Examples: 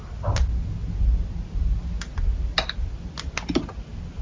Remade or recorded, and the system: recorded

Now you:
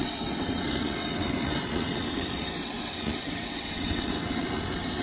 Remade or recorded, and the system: remade, vocoder, WaveNeXt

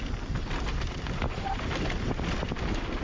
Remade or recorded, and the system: recorded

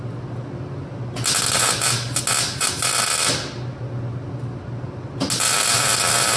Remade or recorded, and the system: recorded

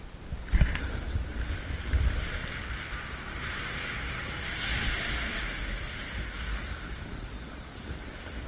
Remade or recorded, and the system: recorded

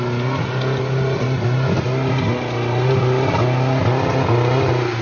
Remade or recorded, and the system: recorded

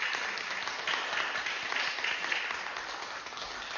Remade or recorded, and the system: recorded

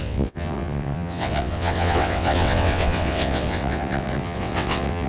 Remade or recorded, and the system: remade, vocoder, WaveNeXt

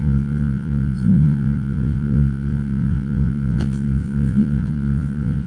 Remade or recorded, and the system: remade, vocoder, WaveNeXt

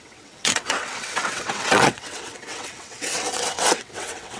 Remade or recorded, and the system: remade, vocoder, WaveNeXt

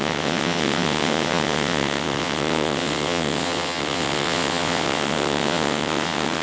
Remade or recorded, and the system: remade, vocoder, WaveNeXt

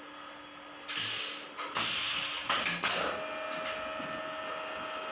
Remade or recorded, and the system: recorded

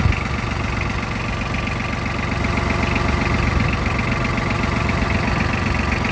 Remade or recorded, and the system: recorded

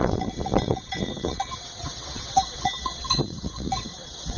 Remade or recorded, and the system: remade, vocoder, WaveNeXt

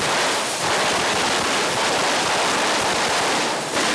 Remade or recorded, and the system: recorded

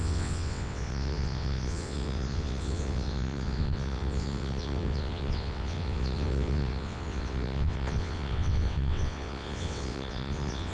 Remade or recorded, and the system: remade, vocoder, WaveNeXt